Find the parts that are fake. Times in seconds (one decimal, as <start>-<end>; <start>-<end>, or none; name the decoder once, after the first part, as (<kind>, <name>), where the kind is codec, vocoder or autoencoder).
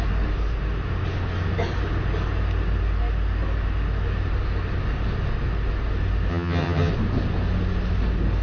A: 6.3-6.9 (vocoder, HiFi-GAN)